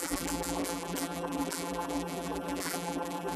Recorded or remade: remade